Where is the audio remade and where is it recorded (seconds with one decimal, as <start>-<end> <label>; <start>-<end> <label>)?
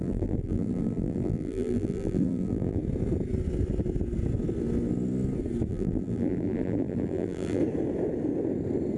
0.0-2.8 remade; 2.8-5.7 recorded; 5.7-7.6 remade; 7.6-9.0 recorded